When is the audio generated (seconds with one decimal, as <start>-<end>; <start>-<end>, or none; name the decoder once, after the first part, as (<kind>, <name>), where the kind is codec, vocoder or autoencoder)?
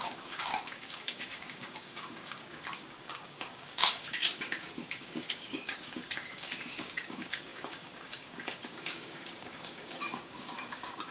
0.0-11.1 (codec, DAC)